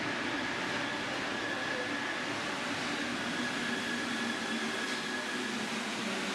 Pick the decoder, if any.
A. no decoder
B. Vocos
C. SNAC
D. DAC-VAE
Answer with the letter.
A